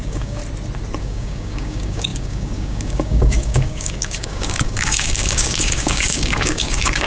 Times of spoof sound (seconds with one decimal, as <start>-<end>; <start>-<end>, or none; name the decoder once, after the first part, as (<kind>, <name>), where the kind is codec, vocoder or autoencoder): 0.0-0.4 (codec, DAC); 1.0-7.1

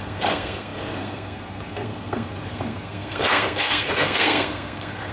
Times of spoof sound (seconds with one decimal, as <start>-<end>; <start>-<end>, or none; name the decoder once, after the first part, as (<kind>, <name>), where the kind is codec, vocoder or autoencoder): 0.0-5.1 (codec, SNAC)

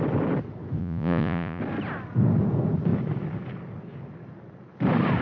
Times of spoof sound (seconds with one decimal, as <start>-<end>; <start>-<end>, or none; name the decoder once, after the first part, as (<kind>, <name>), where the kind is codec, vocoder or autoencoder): 0.8-1.6 (vocoder, Vocos)

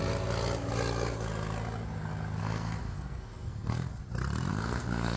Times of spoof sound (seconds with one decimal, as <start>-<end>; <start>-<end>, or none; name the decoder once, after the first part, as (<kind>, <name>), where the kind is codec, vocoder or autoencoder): 2.4-4.0 (codec, SNAC); 4.5-5.2